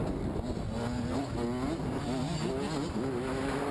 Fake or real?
real